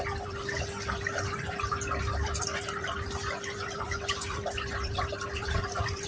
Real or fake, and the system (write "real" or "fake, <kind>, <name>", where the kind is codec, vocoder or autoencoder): fake, vocoder, BigVGAN v2